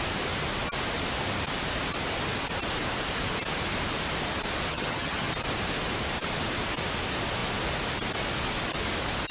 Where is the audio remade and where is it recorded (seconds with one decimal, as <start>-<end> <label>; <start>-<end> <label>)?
0.0-4.7 recorded; 4.7-5.3 remade; 5.3-9.3 recorded